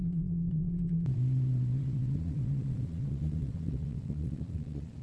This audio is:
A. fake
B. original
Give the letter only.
A